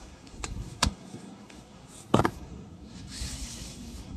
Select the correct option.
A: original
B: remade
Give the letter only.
B